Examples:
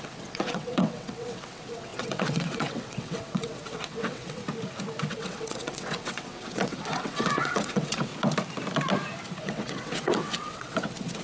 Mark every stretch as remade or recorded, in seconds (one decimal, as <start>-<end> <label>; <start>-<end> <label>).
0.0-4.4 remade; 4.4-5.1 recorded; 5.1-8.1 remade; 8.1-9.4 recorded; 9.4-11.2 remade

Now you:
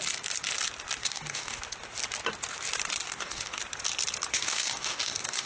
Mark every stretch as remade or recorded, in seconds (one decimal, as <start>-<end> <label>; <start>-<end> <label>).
0.0-1.0 recorded; 1.0-1.6 remade; 1.6-3.0 recorded; 3.0-3.6 remade; 3.6-4.3 recorded; 4.3-5.5 remade

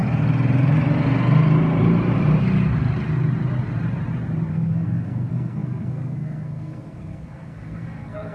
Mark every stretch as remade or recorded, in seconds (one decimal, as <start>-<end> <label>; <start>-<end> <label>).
0.0-4.5 recorded; 4.5-8.3 remade

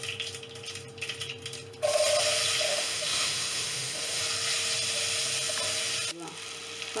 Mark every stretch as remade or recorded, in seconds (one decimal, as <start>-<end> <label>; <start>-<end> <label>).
0.0-2.7 recorded; 2.7-4.2 remade; 4.2-7.0 recorded

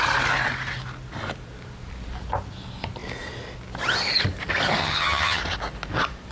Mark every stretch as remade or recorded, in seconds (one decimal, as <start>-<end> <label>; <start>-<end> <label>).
0.0-4.8 recorded; 4.8-5.4 remade; 5.4-6.3 recorded

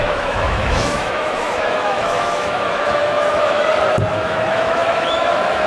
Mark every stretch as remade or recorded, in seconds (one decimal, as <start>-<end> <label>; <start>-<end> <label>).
0.0-3.6 remade; 3.6-4.1 recorded; 4.1-5.7 remade

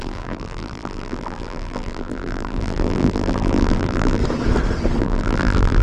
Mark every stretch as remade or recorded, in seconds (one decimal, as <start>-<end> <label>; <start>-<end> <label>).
0.0-4.2 remade; 4.2-5.0 recorded; 5.0-5.8 remade

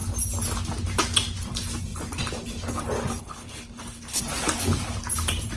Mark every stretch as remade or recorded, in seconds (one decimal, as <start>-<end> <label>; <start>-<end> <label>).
0.0-3.2 recorded; 3.2-4.2 remade; 4.2-5.6 recorded